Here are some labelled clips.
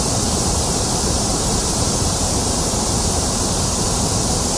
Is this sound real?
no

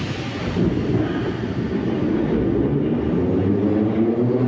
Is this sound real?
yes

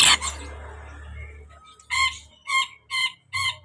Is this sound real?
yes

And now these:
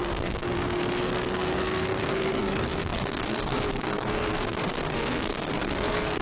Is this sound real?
no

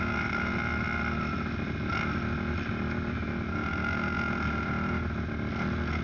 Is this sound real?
yes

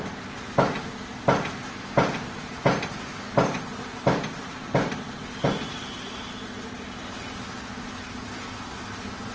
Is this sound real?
yes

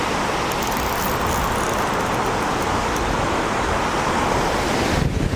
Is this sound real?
yes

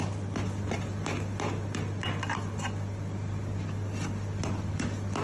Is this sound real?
yes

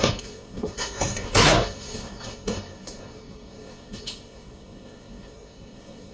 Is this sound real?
no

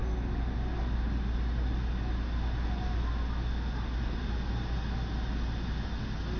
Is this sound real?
yes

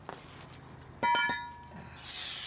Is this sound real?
yes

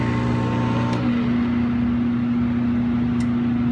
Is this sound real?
yes